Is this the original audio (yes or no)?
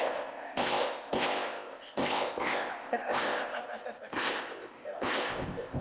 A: no